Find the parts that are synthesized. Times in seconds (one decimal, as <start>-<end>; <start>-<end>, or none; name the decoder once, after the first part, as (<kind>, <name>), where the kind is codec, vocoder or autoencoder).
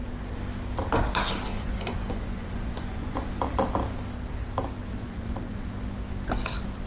1.5-3.1 (vocoder, Vocos); 5.0-5.7